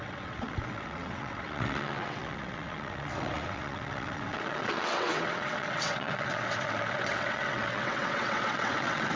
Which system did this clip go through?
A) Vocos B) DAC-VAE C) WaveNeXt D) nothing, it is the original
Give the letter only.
C